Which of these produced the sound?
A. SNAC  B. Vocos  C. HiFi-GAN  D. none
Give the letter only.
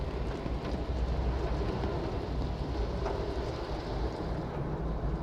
D